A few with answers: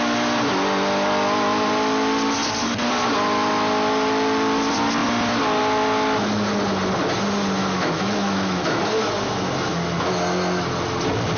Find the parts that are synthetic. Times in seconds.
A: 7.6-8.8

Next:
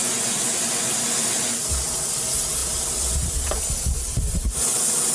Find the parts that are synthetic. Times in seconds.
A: 2.6-3.6

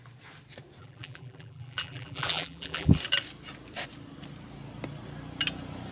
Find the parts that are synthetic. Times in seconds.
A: 0.8-3.0